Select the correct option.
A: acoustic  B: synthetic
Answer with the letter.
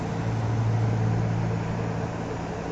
A